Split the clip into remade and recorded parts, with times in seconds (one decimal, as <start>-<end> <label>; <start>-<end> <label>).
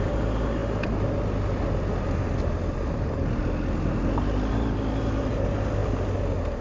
0.0-6.6 recorded